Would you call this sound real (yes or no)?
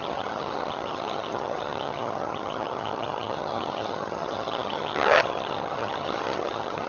no